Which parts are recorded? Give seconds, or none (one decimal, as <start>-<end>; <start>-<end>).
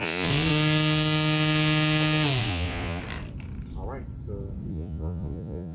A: 0.5-2.4; 3.0-4.7